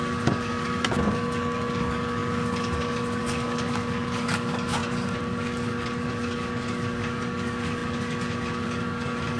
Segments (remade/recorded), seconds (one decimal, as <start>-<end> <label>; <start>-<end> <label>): 0.0-9.4 remade